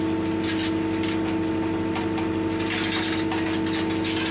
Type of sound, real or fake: real